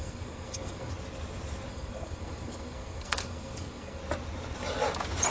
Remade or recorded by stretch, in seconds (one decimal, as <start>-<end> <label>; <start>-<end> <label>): 0.0-0.9 remade; 0.9-1.7 recorded; 1.7-4.0 remade; 4.0-5.3 recorded